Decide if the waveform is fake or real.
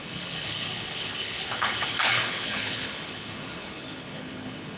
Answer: fake